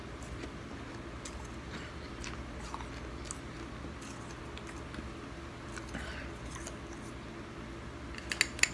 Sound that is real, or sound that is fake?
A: real